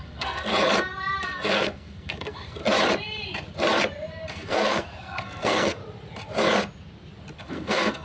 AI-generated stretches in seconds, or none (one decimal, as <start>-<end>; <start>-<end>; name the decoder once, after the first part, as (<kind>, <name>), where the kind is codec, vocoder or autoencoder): 0.0-0.5 (codec, SNAC); 1.2-2.6; 4.3-5.8; 7.4-8.0